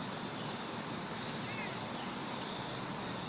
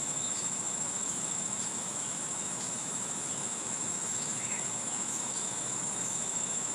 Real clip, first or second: first